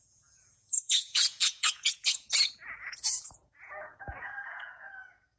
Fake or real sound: fake